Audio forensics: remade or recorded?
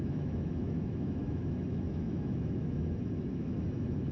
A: remade